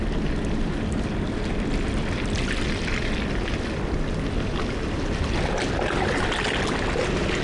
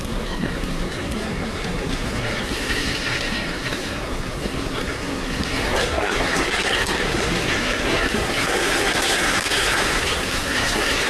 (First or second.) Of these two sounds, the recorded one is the first